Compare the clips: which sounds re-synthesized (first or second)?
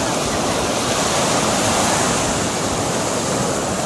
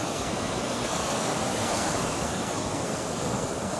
second